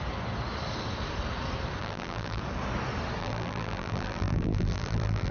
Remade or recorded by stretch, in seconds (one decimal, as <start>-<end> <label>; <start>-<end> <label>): 0.0-1.8 recorded; 1.8-2.4 remade; 2.4-3.2 recorded; 3.2-5.3 remade